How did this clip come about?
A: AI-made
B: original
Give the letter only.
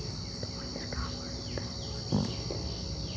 B